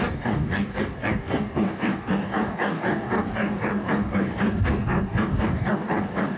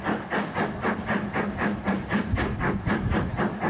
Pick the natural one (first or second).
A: second